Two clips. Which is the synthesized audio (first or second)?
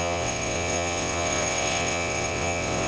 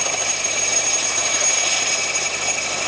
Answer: first